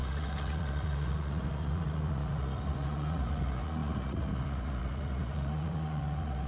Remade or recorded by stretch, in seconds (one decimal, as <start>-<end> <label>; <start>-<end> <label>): 0.0-6.5 remade